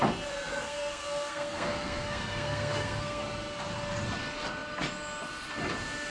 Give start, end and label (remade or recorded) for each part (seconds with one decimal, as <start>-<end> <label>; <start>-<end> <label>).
0.0-0.5 recorded; 0.5-3.2 remade; 3.2-6.1 recorded